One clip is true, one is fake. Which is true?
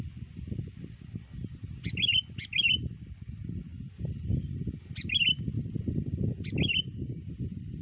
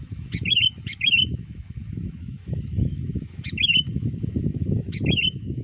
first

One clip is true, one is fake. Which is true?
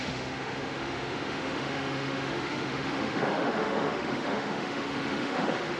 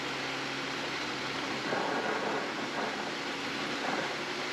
second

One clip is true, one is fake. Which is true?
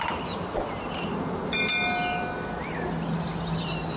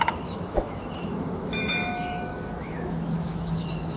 first